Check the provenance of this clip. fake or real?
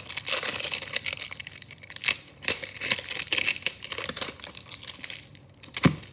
real